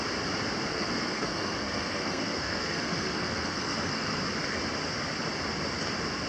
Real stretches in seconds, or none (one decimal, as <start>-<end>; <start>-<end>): 0.0-0.7; 4.2-6.3